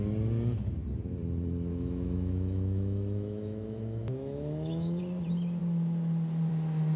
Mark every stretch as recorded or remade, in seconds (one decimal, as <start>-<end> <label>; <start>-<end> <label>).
0.0-1.7 recorded; 1.7-5.0 remade; 5.0-7.0 recorded

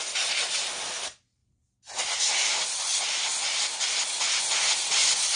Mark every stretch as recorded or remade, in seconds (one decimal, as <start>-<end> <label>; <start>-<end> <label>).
0.0-5.4 recorded